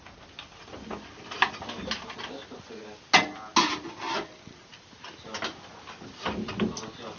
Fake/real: real